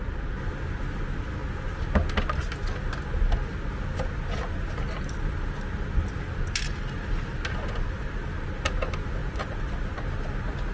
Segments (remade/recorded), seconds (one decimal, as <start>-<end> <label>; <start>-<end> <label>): 0.0-10.7 recorded